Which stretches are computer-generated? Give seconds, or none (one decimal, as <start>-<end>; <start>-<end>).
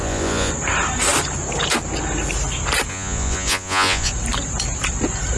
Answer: 0.0-0.5; 2.9-4.1